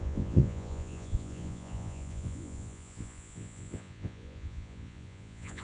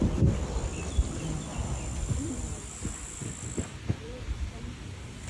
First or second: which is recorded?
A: second